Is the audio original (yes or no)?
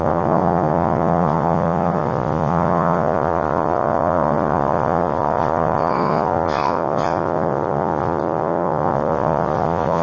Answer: no